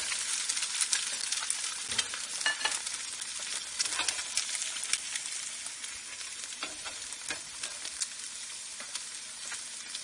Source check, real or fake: real